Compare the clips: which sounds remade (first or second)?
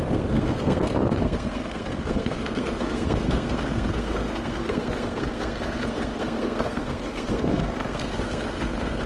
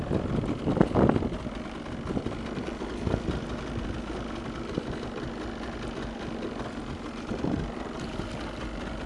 first